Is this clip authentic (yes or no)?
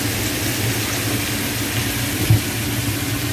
yes